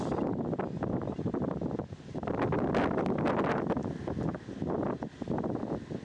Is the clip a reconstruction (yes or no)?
no